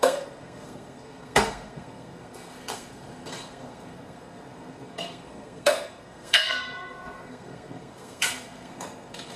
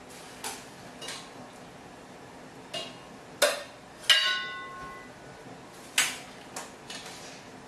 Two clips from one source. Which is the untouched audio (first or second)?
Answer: second